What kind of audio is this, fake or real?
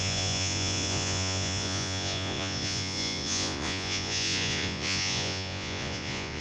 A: fake